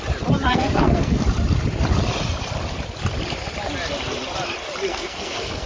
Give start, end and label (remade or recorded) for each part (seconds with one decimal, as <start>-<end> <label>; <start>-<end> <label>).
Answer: 0.0-0.5 recorded; 0.5-1.2 remade; 1.2-4.9 recorded; 4.9-5.7 remade